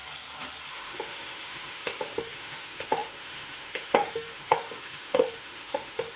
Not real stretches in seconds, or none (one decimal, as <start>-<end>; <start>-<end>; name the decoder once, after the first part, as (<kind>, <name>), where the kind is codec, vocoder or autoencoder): 0.7-6.2 (autoencoder, DAC-VAE)